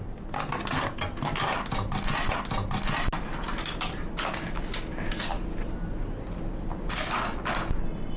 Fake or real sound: real